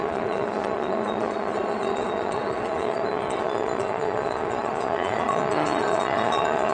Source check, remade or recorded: remade